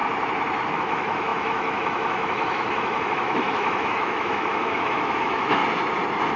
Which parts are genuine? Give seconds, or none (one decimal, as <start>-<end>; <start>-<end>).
0.0-0.7; 5.6-6.4